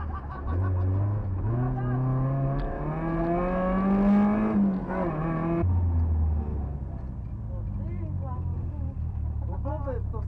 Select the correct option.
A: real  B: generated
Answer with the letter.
A